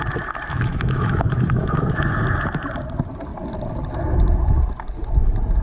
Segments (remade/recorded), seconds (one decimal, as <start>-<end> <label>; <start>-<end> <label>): 0.0-0.5 recorded; 0.5-2.1 remade; 2.1-5.6 recorded